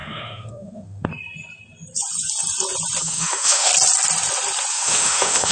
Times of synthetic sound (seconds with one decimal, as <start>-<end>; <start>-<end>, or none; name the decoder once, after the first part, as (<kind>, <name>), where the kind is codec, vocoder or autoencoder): 0.0-1.1 (autoencoder, DAC-VAE); 3.0-3.7; 4.7-5.5